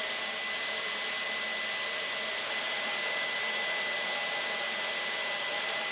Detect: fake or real real